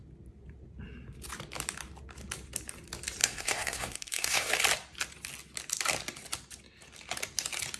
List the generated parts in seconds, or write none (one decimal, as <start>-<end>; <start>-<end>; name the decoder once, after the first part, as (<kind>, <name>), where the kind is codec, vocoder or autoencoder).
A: 3.2-4.5 (codec, SNAC)